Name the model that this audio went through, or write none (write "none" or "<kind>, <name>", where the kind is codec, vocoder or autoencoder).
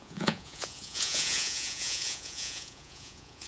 vocoder, Vocos